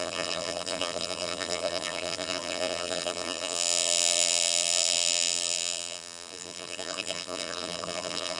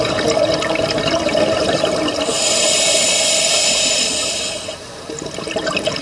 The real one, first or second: second